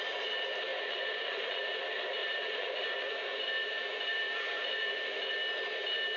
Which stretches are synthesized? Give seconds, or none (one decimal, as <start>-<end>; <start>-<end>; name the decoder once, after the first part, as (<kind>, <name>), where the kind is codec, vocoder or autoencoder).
0.7-1.8 (vocoder, Vocos); 2.2-5.0